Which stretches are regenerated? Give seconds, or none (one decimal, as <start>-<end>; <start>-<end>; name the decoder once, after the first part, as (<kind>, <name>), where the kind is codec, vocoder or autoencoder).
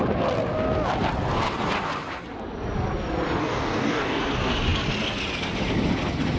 3.4-4.2 (codec, DAC)